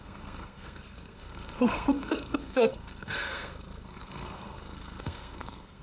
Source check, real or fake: fake